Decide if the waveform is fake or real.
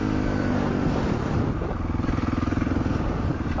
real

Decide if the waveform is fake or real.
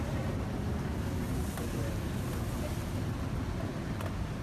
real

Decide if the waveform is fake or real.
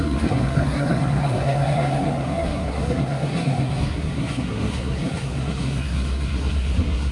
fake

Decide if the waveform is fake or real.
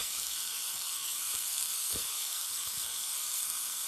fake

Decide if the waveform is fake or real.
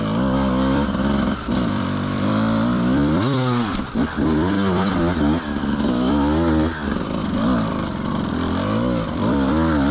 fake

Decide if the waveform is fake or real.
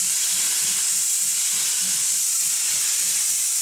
real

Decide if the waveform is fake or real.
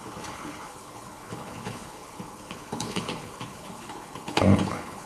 fake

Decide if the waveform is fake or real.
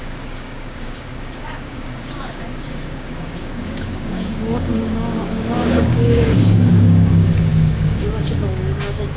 fake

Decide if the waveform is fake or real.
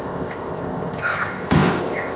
fake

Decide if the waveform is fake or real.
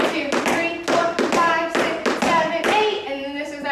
real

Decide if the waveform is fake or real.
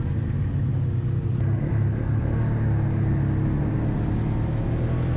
real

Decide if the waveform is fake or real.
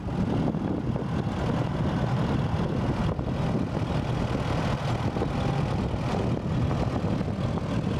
real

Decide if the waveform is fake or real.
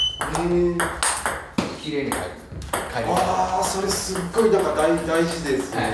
real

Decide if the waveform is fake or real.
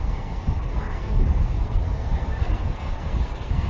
fake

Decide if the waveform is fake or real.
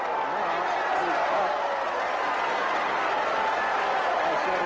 real